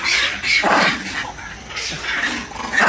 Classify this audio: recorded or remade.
recorded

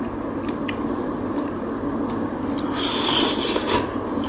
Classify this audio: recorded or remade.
recorded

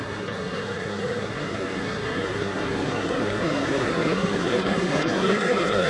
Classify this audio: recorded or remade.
remade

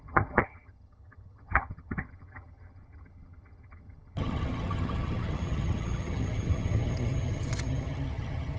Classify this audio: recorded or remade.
remade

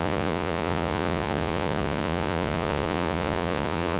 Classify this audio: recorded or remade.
remade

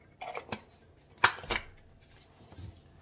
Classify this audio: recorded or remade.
recorded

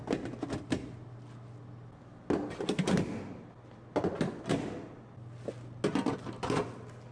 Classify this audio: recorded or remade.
recorded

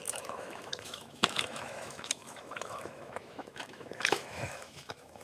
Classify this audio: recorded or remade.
remade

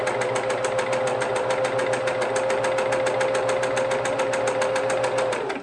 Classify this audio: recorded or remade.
recorded